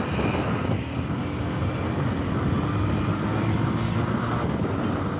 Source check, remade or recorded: recorded